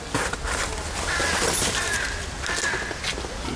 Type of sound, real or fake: real